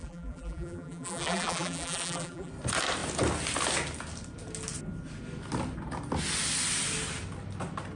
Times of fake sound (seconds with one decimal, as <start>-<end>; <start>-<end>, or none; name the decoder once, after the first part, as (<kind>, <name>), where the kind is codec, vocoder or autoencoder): 0.0-2.5 (vocoder, BigVGAN v2)